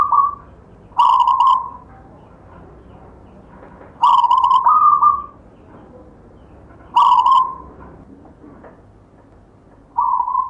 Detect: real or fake real